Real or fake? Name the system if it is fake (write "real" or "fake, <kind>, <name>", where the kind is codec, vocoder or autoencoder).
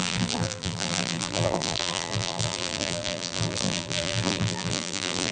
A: fake, vocoder, BigVGAN v2